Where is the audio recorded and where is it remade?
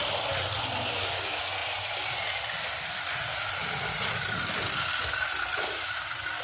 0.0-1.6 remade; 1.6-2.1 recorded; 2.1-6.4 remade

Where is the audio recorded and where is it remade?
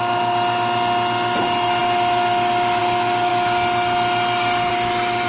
0.0-5.3 recorded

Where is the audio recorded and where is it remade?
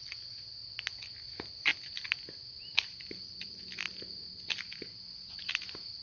0.0-6.0 recorded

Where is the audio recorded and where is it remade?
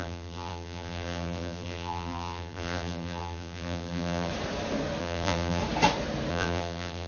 0.0-4.3 remade; 4.3-5.0 recorded; 5.0-5.6 remade; 5.6-6.3 recorded; 6.3-7.1 remade